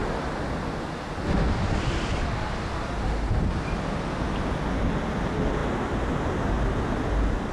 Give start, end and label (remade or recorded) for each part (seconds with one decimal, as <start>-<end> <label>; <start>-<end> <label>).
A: 0.0-7.5 recorded